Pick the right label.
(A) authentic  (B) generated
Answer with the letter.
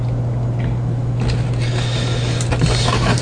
A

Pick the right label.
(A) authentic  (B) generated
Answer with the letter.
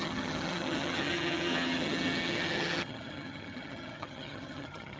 B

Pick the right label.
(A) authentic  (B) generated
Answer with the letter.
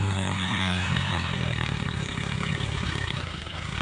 B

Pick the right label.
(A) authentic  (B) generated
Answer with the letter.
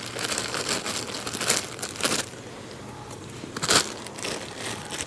A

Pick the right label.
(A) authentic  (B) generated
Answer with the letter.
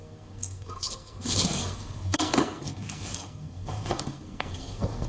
B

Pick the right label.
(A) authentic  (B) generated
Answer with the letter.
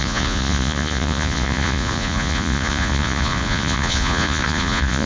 B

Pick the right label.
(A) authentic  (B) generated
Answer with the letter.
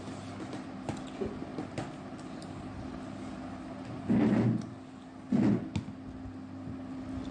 A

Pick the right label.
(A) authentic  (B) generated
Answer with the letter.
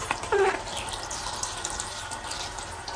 A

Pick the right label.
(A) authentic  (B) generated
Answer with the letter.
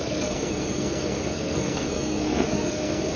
B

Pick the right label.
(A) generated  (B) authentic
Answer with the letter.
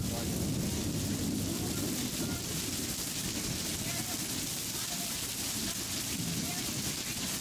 B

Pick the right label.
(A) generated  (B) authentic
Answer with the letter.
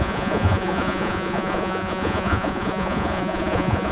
A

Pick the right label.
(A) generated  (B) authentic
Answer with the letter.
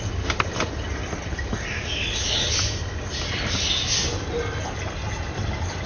B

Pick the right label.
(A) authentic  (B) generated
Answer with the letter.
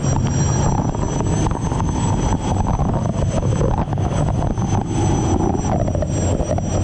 A